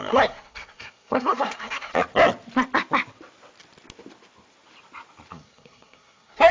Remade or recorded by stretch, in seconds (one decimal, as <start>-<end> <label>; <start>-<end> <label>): 0.0-1.9 remade; 1.9-5.3 recorded; 5.3-6.5 remade